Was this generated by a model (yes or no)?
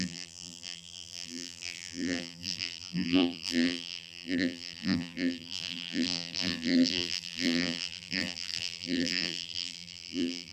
yes